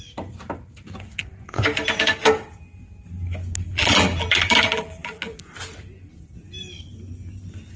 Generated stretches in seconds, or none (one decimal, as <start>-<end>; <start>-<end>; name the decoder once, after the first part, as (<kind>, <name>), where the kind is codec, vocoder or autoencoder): 3.7-5.4 (vocoder, BigVGAN v2)